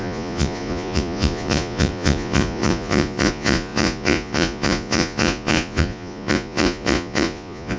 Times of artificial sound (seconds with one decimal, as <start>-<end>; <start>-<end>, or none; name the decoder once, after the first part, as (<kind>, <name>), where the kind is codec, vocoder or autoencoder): 0.0-7.8 (vocoder, Vocos)